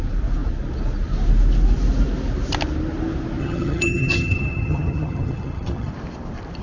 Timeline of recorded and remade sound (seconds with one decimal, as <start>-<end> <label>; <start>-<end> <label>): 0.0-3.4 recorded; 3.4-5.9 remade; 5.9-6.6 recorded